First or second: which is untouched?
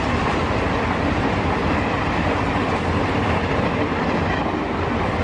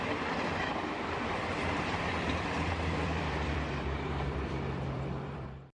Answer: first